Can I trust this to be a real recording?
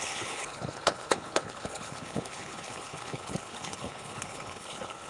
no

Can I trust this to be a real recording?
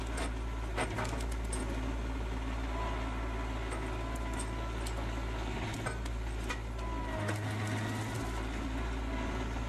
yes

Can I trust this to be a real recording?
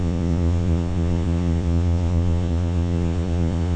no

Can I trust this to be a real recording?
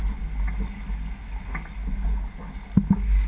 yes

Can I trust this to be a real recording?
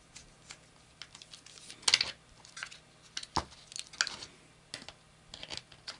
yes